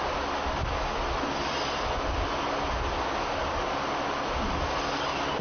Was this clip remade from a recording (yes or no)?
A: no